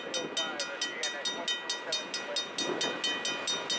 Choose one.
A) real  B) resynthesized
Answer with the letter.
A